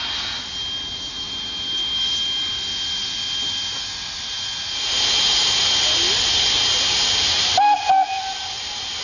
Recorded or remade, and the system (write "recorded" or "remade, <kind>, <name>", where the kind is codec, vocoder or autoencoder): recorded